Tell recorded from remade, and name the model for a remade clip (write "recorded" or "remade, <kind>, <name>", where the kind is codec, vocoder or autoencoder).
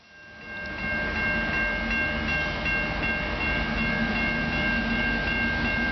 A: recorded